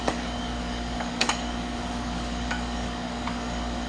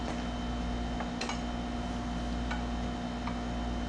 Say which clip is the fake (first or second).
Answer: first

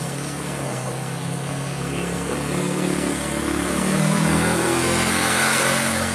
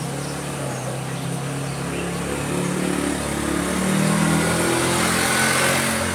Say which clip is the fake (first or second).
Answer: first